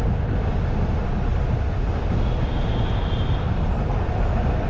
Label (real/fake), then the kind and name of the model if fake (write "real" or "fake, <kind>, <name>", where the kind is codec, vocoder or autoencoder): real